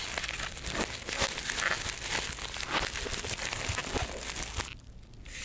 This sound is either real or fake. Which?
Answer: real